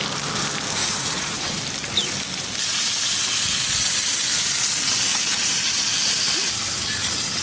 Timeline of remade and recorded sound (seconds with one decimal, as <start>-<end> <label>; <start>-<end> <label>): 0.0-0.8 recorded; 0.8-1.6 remade; 1.6-7.4 recorded